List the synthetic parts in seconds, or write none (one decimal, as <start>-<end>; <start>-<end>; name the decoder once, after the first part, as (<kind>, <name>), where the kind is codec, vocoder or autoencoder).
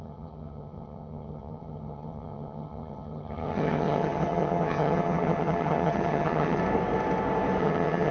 0.0-6.6 (vocoder, HiFi-GAN); 7.6-8.1